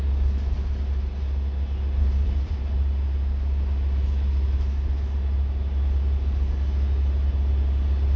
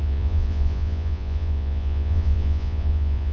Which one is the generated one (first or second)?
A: second